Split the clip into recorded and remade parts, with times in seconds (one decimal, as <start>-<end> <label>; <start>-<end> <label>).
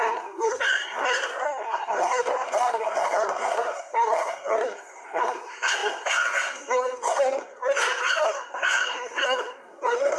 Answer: 0.0-10.2 remade